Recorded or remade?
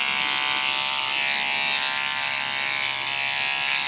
recorded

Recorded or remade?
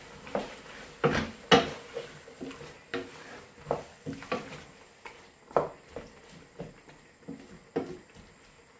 recorded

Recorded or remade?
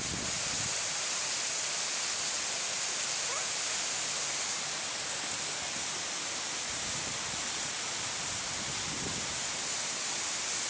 recorded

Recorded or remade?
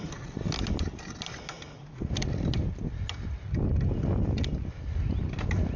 recorded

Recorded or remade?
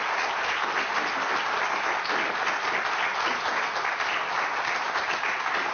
recorded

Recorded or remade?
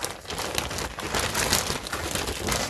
recorded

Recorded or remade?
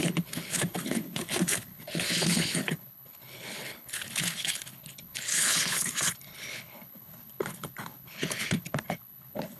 remade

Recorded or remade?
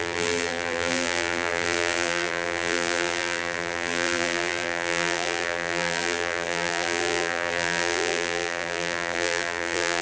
remade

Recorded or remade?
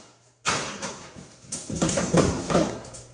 remade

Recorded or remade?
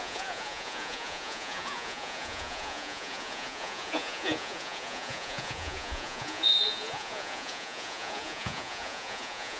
remade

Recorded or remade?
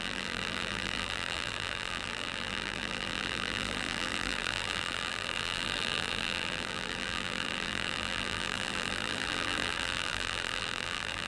remade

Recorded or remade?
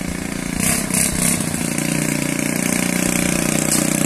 recorded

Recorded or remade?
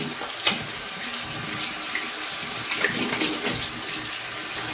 recorded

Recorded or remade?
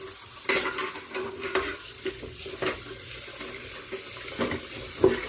recorded